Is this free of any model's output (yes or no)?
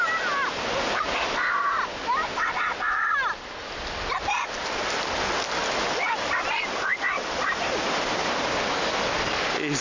yes